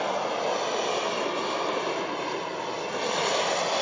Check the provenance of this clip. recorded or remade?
recorded